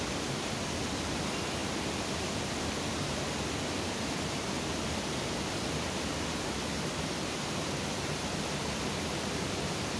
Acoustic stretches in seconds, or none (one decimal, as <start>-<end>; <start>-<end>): 0.0-10.0

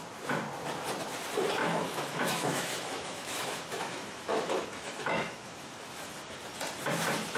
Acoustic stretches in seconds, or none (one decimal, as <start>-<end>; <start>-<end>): 0.0-1.6; 6.0-7.4

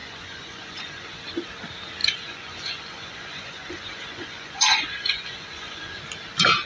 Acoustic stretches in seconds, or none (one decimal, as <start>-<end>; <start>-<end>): 1.2-2.0; 6.0-6.6

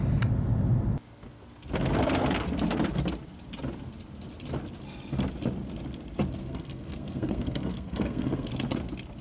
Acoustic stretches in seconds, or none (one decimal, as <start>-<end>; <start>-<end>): 0.0-6.4; 8.5-9.2

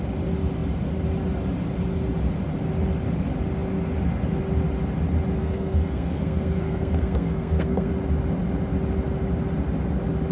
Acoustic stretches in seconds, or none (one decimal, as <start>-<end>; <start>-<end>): 0.0-5.4; 7.9-10.3

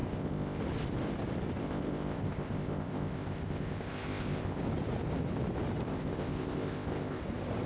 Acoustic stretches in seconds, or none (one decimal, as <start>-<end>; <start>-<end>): 0.6-1.6; 4.6-5.9; 7.2-7.7